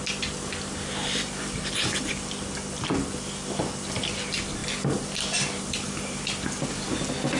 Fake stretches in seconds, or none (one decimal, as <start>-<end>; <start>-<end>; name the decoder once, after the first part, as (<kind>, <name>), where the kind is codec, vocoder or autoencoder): none